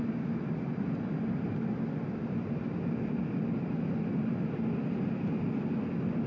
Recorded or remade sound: recorded